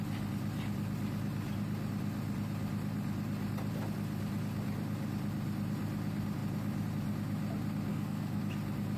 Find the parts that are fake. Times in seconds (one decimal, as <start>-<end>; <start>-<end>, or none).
7.9-8.4

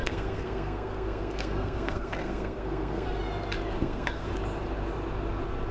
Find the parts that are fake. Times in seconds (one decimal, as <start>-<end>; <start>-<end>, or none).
0.0-3.2; 3.8-4.3

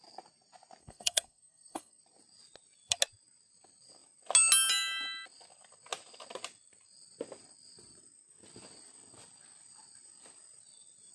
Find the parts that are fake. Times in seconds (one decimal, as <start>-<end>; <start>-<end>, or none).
0.8-2.0

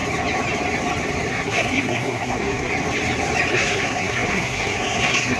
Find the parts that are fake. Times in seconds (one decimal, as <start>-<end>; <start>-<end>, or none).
1.3-2.7; 3.5-5.4